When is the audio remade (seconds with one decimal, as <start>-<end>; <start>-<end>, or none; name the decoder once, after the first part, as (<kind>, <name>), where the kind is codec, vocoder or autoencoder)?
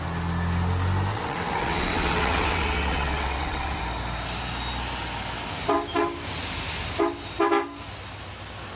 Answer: 1.1-3.8 (vocoder, WaveNeXt)